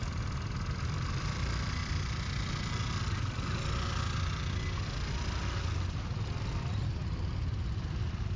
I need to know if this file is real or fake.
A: real